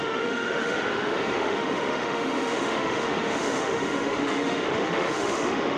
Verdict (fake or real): fake